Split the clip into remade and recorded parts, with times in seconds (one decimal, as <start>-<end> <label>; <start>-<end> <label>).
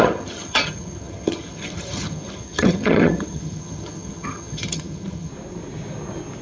0.0-5.3 remade; 5.3-6.4 recorded